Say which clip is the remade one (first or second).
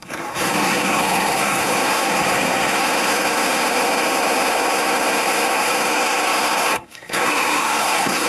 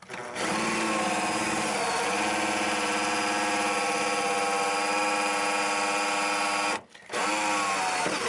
first